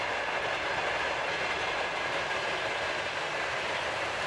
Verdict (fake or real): real